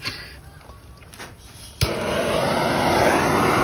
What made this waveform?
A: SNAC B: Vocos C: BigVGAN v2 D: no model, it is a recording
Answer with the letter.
D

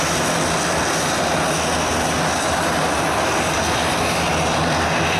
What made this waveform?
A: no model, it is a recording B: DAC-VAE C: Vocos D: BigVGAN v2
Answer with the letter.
A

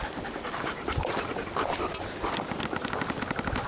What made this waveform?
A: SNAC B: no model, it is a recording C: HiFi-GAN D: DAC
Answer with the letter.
B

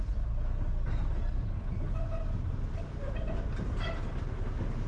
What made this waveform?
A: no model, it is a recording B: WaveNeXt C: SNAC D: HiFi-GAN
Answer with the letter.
A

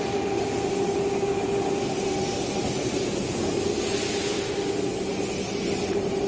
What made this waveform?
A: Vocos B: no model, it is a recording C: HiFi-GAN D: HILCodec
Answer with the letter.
B